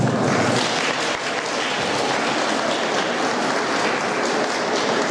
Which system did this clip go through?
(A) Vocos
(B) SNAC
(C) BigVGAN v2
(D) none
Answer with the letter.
D